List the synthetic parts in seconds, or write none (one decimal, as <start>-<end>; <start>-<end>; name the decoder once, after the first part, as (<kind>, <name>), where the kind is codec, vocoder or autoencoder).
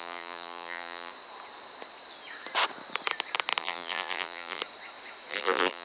0.0-1.1 (vocoder, BigVGAN v2); 3.6-4.6; 5.3-5.8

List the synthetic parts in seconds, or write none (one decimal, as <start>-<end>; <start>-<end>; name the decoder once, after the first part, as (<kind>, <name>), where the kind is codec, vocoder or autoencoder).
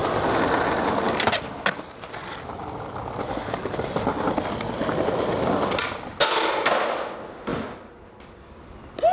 none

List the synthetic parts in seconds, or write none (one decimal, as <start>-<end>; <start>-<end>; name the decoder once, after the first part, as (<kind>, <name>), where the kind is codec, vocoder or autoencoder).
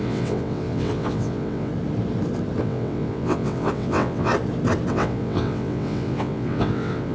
0.0-1.7 (vocoder, WaveNeXt); 2.6-4.3; 4.9-7.1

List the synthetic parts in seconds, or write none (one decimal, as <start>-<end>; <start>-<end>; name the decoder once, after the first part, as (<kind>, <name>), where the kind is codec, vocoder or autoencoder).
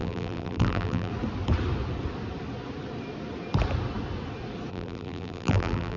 0.0-1.1 (vocoder, BigVGAN v2); 4.7-6.0